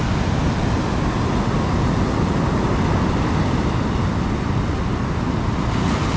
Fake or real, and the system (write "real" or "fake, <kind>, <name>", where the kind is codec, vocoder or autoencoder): real